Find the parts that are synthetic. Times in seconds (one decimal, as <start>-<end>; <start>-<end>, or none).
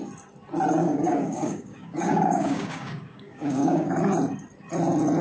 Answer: 0.8-3.9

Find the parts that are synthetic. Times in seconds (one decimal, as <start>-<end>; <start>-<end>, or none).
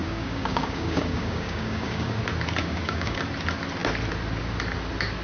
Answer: 0.0-2.2; 2.6-3.2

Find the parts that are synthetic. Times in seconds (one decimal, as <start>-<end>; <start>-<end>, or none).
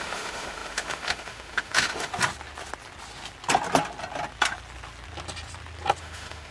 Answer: 0.0-2.1; 6.0-6.5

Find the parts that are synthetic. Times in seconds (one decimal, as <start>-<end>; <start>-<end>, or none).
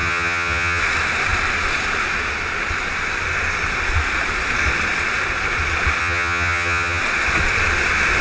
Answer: 0.0-0.8; 6.0-7.0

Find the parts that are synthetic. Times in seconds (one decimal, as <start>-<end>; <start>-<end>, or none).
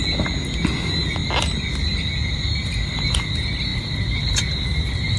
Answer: 3.7-5.2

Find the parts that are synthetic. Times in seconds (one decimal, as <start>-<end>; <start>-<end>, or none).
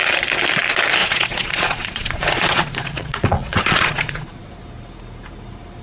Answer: 1.0-4.5